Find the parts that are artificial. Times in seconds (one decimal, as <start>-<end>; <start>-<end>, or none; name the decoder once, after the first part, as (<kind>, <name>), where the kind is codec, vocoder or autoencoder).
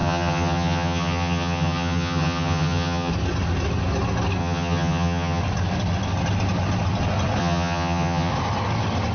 0.0-3.1 (vocoder, HiFi-GAN); 4.4-5.4; 7.4-8.3